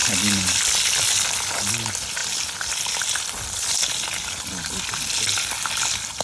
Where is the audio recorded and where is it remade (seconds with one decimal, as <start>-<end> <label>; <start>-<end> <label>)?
0.0-6.2 recorded